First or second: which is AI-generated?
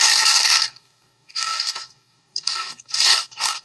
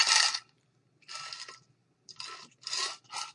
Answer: first